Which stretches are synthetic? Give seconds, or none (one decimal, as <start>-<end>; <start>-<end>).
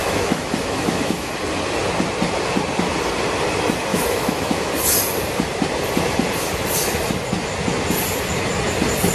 0.0-1.3; 3.9-4.7